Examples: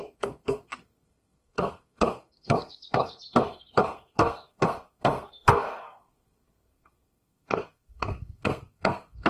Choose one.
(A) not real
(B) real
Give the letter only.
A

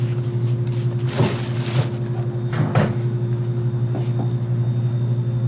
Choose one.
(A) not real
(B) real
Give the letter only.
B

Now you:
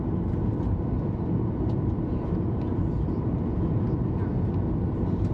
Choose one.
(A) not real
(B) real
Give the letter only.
B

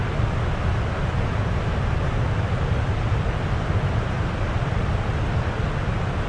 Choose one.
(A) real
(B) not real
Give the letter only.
A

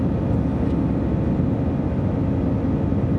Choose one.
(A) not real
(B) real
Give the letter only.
B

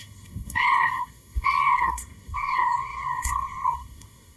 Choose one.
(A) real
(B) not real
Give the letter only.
B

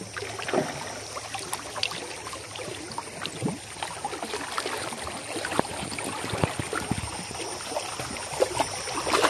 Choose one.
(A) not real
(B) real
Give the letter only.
B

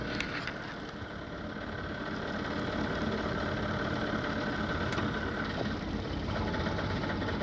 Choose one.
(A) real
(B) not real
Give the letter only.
A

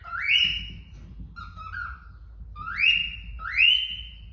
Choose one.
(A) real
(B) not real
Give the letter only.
A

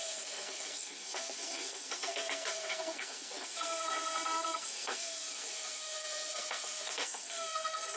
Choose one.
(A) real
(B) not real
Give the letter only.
B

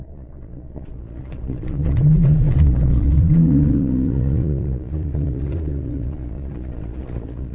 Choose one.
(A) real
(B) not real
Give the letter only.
B